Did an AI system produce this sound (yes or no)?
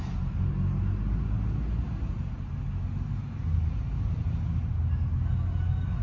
no